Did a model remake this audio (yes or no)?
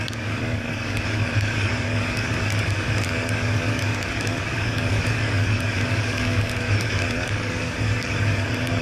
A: yes